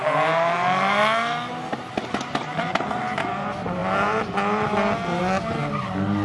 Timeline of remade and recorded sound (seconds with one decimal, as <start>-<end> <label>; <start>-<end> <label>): 0.0-6.2 recorded